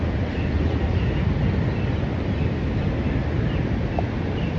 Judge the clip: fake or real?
real